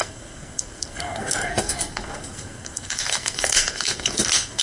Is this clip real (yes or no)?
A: no